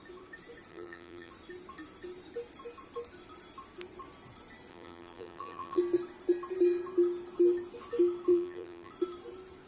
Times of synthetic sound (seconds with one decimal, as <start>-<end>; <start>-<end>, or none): 0.7-1.3; 4.7-5.8; 8.3-8.9